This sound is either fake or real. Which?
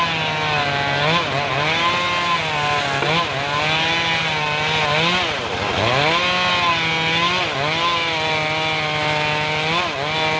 real